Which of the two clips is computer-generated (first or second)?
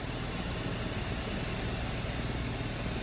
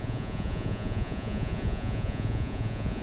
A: second